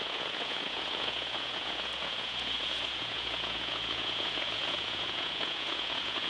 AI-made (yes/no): yes